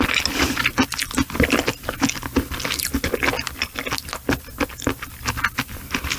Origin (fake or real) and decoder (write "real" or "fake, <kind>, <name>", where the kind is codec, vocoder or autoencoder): real